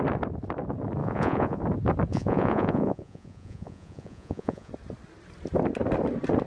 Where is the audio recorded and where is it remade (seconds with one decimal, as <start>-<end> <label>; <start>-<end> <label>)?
0.0-1.0 recorded; 1.0-1.6 remade; 1.6-2.1 recorded; 2.1-4.7 remade; 4.7-6.5 recorded